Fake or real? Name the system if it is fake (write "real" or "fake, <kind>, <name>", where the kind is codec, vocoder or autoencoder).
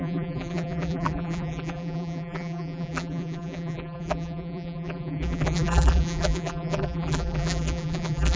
fake, vocoder, BigVGAN v2